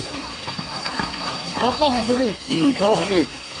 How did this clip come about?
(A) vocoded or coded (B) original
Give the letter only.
A